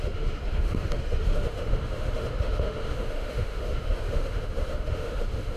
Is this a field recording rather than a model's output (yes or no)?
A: no